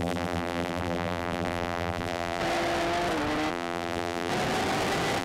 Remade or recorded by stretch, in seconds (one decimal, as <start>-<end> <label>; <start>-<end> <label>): 0.0-2.4 remade; 2.4-3.5 recorded; 3.5-4.3 remade; 4.3-5.2 recorded